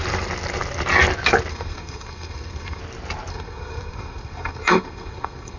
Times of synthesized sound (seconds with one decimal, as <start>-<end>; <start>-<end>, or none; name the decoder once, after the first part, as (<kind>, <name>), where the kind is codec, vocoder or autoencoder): 1.5-2.8 (codec, SNAC); 3.3-5.6